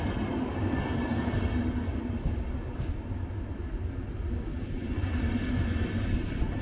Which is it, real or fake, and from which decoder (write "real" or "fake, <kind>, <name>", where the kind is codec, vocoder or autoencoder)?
real